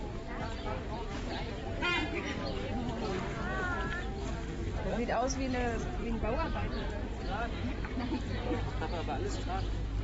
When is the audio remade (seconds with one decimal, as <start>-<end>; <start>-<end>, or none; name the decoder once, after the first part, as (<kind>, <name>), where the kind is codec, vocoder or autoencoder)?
7.3-7.8 (vocoder, BigVGAN v2)